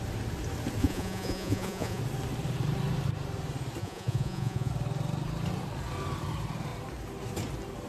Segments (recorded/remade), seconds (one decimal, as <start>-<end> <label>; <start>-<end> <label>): 0.0-0.8 recorded; 0.8-2.0 remade; 2.0-3.8 recorded; 3.8-4.7 remade; 4.7-7.9 recorded